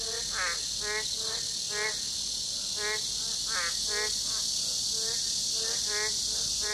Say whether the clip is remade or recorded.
recorded